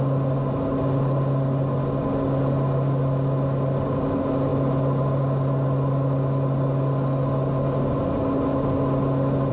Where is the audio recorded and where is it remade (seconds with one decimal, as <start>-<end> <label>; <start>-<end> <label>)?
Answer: 0.0-9.5 recorded